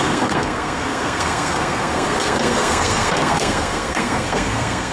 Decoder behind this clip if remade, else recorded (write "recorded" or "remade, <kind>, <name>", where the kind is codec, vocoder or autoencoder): remade, codec, SNAC